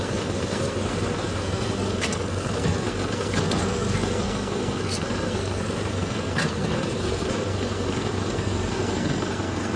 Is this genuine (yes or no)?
no